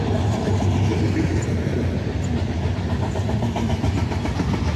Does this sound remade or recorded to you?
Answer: recorded